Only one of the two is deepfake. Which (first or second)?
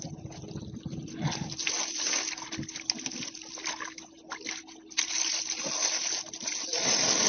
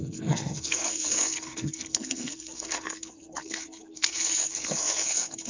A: second